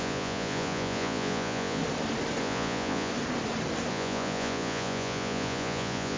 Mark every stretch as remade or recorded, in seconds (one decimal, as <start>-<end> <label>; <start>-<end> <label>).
0.0-1.8 remade; 1.8-2.4 recorded; 2.4-3.1 remade; 3.1-3.9 recorded; 3.9-6.2 remade

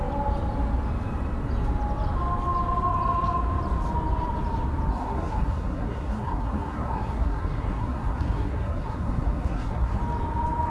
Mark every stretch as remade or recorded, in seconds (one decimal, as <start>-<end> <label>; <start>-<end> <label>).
0.0-4.9 recorded; 4.9-10.0 remade; 10.0-10.7 recorded

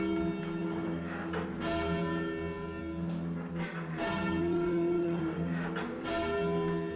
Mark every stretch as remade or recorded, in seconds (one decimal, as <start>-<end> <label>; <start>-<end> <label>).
0.0-4.4 recorded; 4.4-5.2 remade; 5.2-7.0 recorded

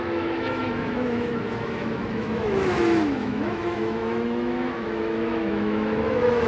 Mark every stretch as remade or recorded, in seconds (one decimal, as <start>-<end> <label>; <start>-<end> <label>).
0.0-6.5 remade

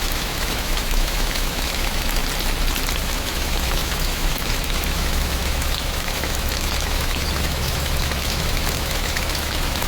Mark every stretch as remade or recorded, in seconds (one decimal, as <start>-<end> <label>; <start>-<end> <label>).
0.0-2.2 remade; 2.2-3.0 recorded; 3.0-9.9 remade

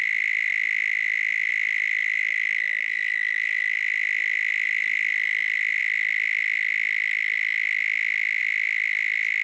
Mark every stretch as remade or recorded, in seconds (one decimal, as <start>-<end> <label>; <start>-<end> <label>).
0.0-0.5 remade; 0.5-1.5 recorded; 1.5-2.2 remade; 2.2-3.8 recorded; 3.8-5.8 remade; 5.8-8.4 recorded; 8.4-9.4 remade

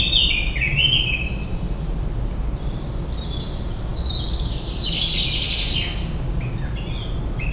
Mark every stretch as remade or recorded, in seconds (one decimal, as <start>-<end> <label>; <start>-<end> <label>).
0.0-7.5 recorded

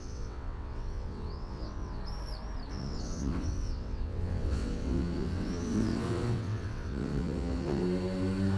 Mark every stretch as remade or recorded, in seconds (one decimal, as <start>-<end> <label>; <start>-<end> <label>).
0.0-2.0 remade; 2.0-2.7 recorded; 2.7-7.8 remade; 7.8-8.6 recorded